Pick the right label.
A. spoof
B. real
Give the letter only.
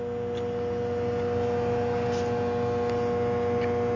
B